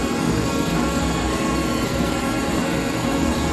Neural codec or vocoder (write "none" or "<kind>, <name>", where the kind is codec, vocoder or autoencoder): codec, SNAC